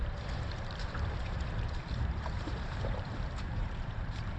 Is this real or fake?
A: fake